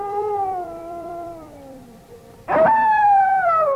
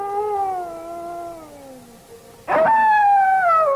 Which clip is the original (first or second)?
second